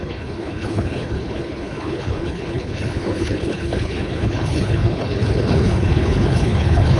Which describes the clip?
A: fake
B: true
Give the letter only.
A